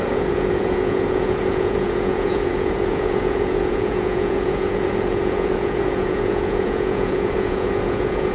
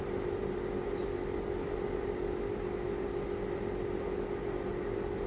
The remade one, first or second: first